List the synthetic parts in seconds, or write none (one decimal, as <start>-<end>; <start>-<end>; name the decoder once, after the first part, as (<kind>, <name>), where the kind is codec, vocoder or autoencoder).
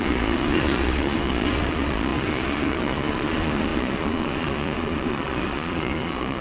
0.0-6.4 (vocoder, Vocos)